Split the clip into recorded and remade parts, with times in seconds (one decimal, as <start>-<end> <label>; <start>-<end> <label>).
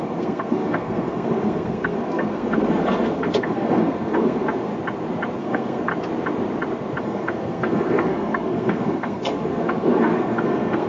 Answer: 0.0-4.7 remade; 4.7-5.4 recorded; 5.4-5.9 remade; 5.9-7.0 recorded; 7.0-10.9 remade